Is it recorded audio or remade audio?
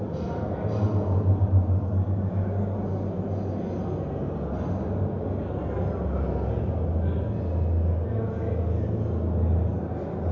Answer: recorded